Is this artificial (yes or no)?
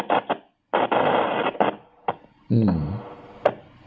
no